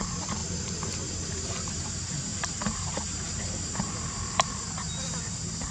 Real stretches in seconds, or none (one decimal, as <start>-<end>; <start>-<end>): none